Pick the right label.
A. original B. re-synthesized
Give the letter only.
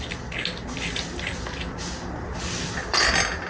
A